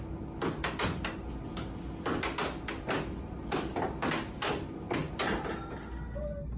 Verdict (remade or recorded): recorded